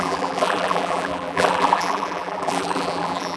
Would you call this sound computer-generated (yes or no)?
yes